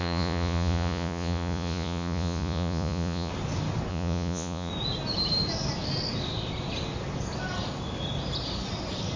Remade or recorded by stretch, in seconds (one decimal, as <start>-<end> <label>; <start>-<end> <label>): 0.0-3.3 remade; 3.3-3.9 recorded; 3.9-4.7 remade; 4.7-9.2 recorded